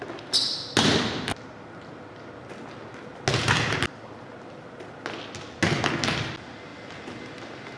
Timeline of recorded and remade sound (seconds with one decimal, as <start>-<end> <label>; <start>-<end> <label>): 0.0-7.8 recorded